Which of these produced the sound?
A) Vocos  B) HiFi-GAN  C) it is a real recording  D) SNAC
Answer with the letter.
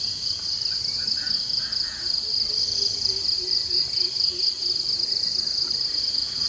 C